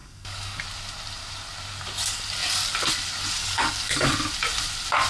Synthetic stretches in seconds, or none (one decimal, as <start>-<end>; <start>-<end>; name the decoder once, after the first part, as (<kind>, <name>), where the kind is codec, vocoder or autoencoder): 0.0-0.6 (codec, DAC); 3.4-4.1